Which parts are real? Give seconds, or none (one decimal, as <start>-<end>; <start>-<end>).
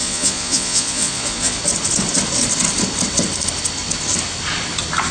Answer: 1.6-5.1